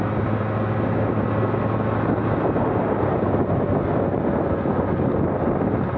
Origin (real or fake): real